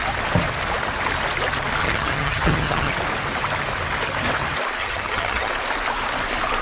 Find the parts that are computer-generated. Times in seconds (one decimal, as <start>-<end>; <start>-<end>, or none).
1.8-2.9; 4.8-5.5